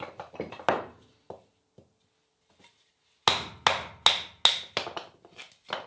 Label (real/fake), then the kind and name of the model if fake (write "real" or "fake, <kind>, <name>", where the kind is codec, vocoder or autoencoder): real